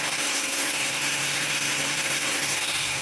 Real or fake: fake